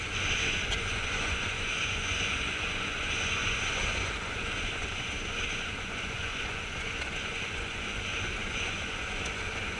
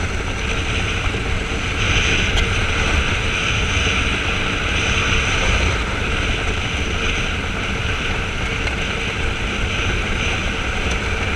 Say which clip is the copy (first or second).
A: first